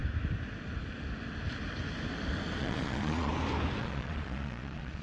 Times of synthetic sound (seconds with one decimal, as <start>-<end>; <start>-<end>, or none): 2.6-3.3; 3.8-5.0